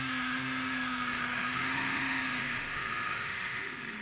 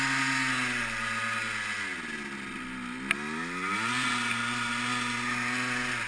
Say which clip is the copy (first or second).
first